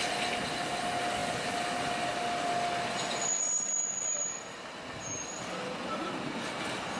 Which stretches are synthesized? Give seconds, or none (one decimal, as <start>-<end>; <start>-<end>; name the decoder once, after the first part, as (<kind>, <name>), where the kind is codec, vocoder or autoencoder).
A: none